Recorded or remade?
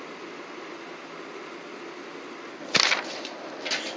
recorded